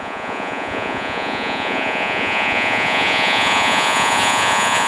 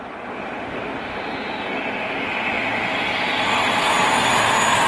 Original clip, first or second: second